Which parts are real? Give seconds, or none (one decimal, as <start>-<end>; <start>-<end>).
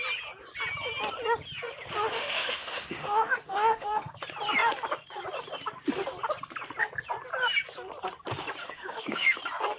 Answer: 0.0-2.1; 4.1-8.6; 9.4-9.8